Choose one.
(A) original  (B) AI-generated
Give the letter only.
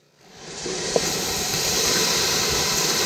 B